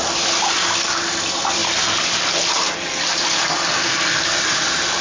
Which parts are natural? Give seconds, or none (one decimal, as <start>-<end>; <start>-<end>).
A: 0.0-1.6; 4.6-5.0